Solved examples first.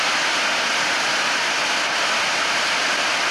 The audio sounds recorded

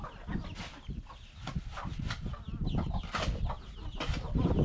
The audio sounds recorded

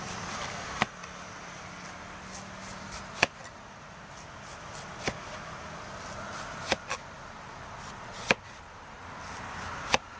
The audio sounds recorded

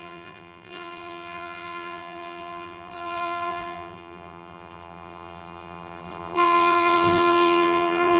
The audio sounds remade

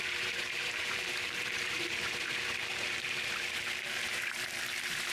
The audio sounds remade